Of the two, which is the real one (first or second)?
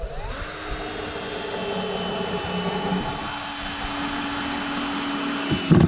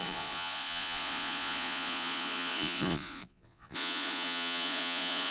first